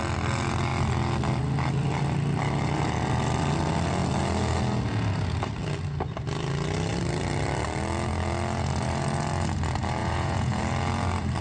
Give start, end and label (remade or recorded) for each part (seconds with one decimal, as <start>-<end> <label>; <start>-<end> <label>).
0.0-10.0 recorded; 10.0-10.6 remade; 10.6-11.4 recorded